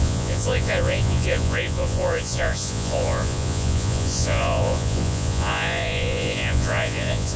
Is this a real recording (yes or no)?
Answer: no